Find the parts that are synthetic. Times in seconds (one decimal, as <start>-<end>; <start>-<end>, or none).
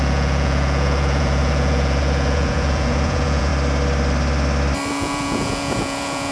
0.0-3.5; 4.9-6.3